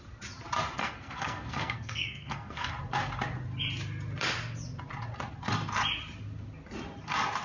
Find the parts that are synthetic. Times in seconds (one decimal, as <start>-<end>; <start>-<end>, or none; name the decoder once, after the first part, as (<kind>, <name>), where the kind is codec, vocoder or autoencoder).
0.8-2.7 (codec, SNAC)